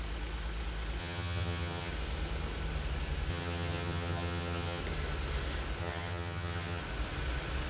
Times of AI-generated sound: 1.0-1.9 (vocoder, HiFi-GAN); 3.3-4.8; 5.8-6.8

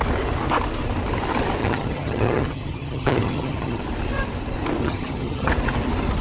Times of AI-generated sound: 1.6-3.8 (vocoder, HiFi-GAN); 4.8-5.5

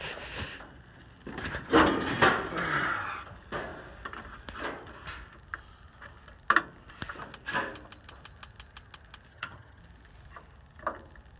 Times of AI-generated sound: 9.3-9.8 (vocoder, HiFi-GAN)

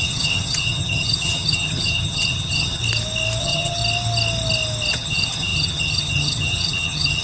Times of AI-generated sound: 0.0-2.8 (vocoder, HiFi-GAN); 3.4-3.8; 4.9-7.2